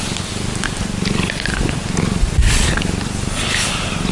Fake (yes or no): no